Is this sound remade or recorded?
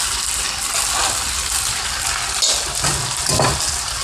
recorded